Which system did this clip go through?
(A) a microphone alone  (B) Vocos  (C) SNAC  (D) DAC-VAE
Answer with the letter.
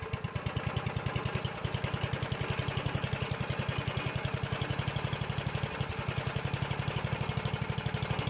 A